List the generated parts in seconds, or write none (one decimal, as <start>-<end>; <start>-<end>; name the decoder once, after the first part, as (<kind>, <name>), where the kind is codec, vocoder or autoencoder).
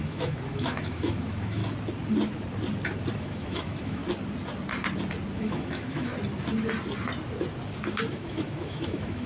0.0-1.6 (autoencoder, DAC-VAE); 3.1-4.0; 5.3-6.1; 8.1-9.3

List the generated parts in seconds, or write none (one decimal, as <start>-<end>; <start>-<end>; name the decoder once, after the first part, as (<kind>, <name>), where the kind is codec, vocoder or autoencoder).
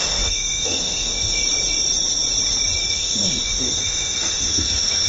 0.0-1.4 (autoencoder, DAC-VAE); 2.9-5.1